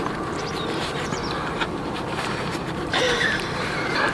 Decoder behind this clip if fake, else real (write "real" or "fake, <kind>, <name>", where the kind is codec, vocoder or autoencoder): fake, vocoder, BigVGAN v2